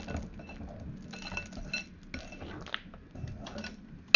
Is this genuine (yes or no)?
yes